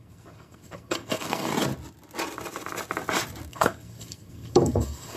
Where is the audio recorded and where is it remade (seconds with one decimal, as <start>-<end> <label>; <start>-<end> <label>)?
0.0-1.5 remade; 1.5-3.5 recorded; 3.5-5.2 remade